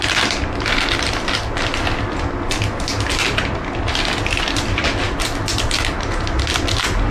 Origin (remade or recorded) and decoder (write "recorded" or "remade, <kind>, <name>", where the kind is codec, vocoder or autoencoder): recorded